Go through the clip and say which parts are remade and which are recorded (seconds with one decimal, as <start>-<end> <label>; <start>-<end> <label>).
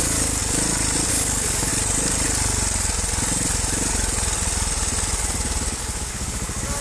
0.0-0.4 remade; 0.4-1.1 recorded; 1.1-1.7 remade; 1.7-5.8 recorded; 5.8-6.8 remade